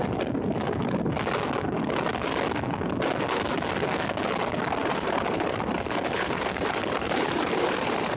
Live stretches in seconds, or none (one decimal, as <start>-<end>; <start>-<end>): 0.0-4.8